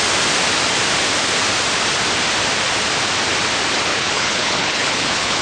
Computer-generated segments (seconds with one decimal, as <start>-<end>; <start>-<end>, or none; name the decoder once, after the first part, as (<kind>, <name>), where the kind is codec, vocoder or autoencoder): 3.9-5.4 (codec, HILCodec)